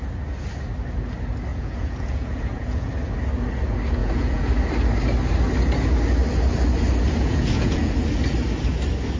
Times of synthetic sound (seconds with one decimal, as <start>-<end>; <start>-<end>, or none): 1.5-2.9; 4.0-4.5; 7.2-7.9